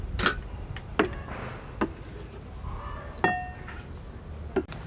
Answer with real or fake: real